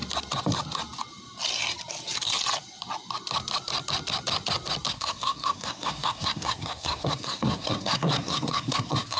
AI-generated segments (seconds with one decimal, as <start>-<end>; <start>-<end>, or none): 4.9-9.2